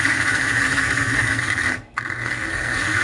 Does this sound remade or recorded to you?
remade